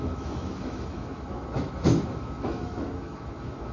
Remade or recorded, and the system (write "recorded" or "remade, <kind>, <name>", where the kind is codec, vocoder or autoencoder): remade, autoencoder, DAC-VAE